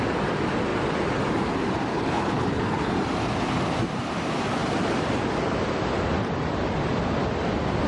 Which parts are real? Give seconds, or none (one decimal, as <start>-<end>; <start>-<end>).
0.0-1.9; 2.9-7.9